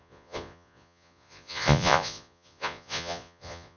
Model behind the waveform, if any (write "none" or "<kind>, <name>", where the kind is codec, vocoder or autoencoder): vocoder, Vocos